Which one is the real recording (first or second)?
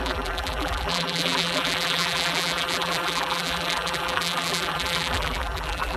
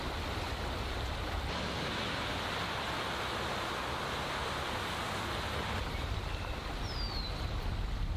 second